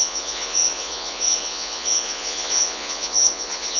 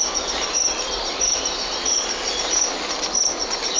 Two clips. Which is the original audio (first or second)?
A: second